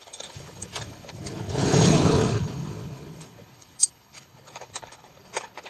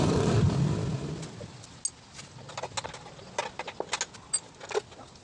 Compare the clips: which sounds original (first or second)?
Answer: second